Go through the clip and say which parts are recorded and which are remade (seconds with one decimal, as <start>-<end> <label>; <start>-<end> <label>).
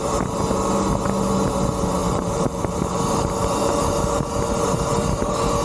0.0-2.0 recorded; 2.0-3.7 remade; 3.7-5.6 recorded